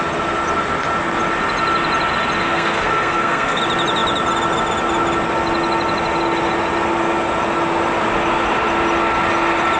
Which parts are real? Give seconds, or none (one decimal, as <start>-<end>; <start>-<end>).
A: 0.0-2.4; 3.6-9.8